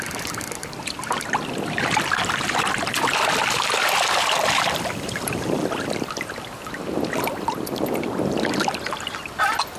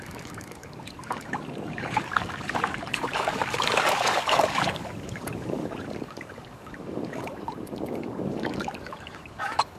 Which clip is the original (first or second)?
first